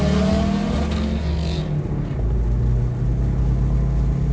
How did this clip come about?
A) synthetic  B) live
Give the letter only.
B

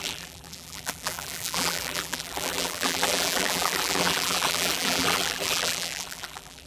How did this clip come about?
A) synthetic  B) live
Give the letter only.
A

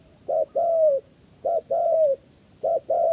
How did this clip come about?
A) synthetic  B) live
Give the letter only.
B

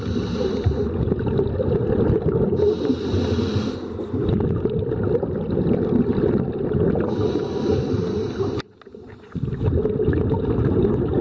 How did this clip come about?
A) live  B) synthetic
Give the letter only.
A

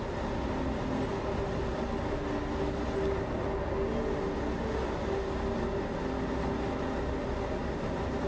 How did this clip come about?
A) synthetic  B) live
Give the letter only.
B